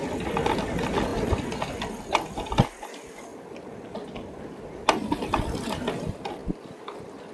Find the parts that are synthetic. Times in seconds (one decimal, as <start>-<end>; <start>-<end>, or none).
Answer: none